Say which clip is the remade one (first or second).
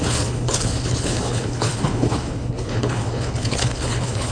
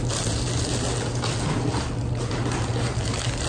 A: first